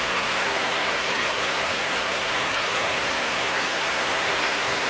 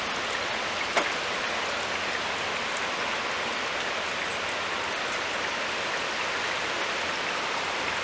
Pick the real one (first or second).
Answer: second